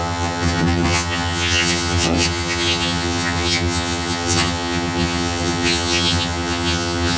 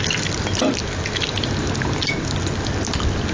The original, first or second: second